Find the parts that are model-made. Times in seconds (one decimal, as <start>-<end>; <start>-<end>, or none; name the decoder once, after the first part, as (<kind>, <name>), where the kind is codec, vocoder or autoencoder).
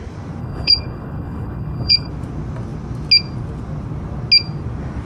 0.4-2.1 (codec, HILCodec)